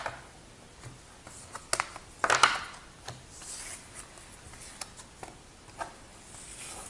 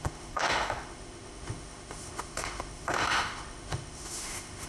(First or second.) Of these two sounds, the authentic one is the first